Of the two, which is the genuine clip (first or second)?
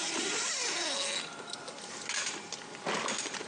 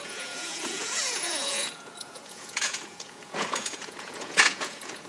first